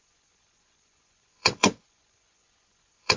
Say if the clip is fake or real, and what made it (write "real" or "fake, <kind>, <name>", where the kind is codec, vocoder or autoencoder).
fake, vocoder, Vocos